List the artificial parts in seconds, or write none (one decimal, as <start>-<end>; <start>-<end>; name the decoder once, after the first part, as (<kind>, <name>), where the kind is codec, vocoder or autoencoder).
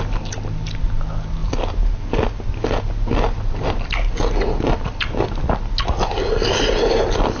none